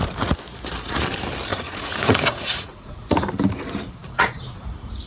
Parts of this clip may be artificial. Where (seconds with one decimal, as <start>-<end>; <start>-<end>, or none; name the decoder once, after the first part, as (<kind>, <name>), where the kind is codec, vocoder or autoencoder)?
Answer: 1.5-3.3 (vocoder, Vocos); 4.0-5.1